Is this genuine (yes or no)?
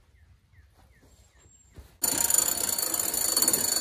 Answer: yes